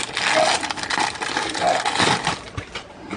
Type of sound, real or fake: real